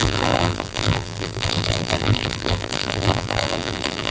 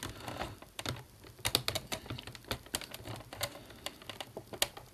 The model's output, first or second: first